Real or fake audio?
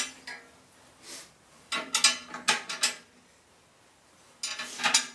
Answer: real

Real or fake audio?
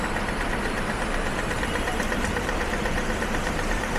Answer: fake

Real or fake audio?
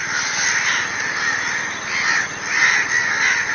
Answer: real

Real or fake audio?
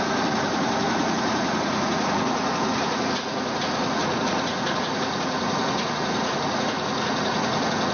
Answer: fake